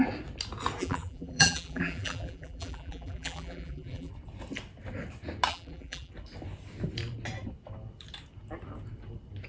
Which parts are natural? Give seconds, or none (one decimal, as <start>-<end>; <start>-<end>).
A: 0.0-0.8; 4.1-5.5; 6.1-9.5